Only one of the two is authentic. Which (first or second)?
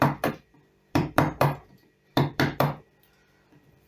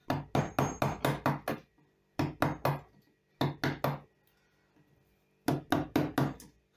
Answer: second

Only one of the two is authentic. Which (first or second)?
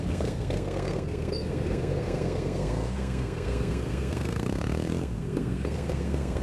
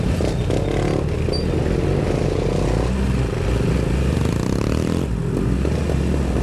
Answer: second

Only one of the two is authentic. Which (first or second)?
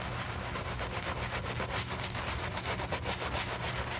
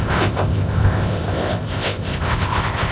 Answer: first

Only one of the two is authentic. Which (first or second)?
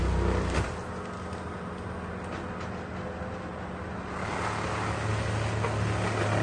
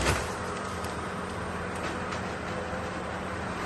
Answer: first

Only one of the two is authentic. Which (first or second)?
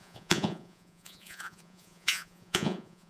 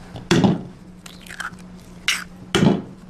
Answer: second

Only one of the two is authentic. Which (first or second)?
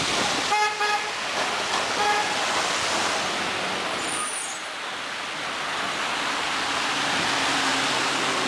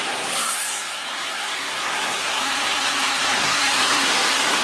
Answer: first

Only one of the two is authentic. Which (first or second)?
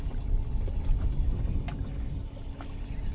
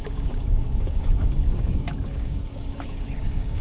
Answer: first